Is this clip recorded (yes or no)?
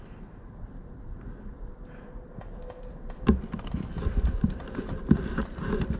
yes